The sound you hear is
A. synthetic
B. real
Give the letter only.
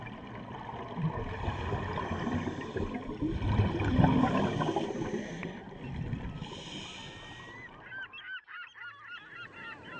B